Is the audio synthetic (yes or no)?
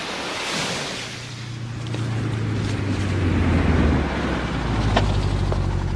no